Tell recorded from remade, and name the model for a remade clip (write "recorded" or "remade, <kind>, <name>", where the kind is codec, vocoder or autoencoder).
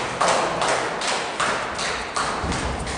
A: recorded